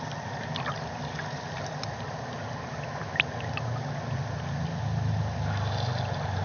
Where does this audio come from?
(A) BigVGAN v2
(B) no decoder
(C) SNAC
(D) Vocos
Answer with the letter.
B